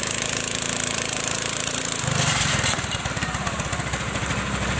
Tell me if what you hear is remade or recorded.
remade